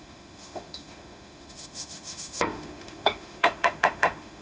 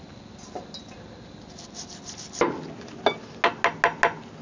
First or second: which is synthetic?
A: first